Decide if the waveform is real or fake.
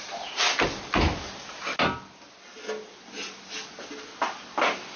real